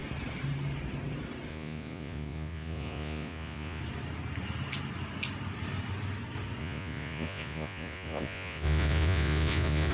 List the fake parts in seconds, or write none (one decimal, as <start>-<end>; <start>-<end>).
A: 1.5-3.8; 6.6-9.9